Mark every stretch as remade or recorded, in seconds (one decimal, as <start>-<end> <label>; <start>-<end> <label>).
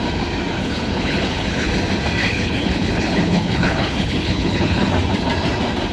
0.0-0.6 recorded; 0.6-1.7 remade; 1.7-2.2 recorded; 2.2-4.9 remade; 4.9-5.9 recorded